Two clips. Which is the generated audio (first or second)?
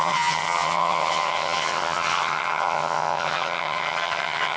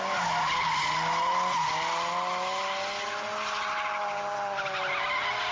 first